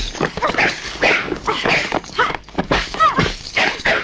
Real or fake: fake